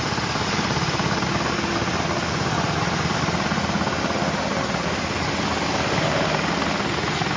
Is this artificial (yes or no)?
no